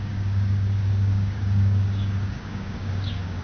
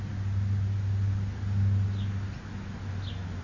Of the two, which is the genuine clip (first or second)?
second